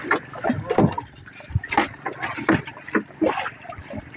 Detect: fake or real real